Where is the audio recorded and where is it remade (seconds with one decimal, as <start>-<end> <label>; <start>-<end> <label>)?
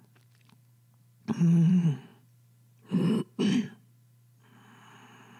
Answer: 0.0-5.4 recorded